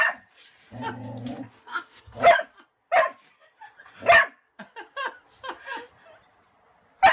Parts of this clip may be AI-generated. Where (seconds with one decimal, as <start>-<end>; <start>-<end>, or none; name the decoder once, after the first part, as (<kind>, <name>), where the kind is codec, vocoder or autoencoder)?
1.6-2.2 (codec, SNAC)